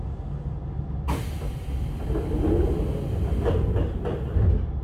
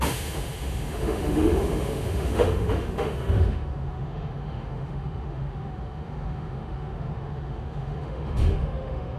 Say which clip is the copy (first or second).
second